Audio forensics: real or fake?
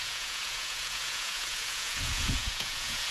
fake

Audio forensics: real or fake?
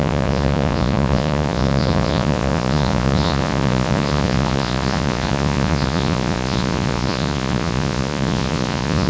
fake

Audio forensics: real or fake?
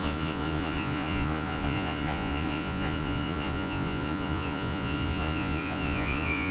fake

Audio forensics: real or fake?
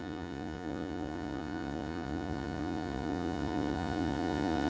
fake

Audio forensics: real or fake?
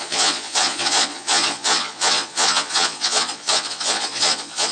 fake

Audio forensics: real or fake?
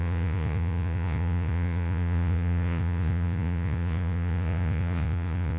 fake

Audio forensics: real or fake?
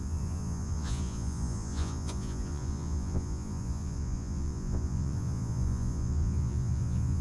fake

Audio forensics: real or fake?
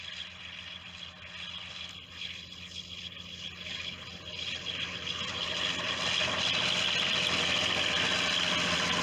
real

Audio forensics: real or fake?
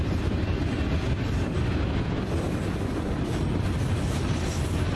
real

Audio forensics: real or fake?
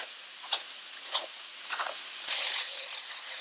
fake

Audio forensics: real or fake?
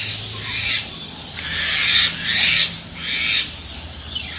real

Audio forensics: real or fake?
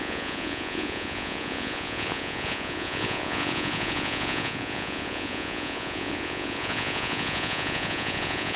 fake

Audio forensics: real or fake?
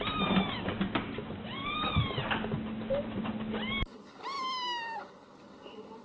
real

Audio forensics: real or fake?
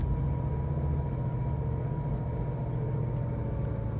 real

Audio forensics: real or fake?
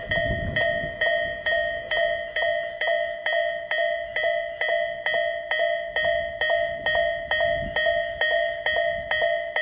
real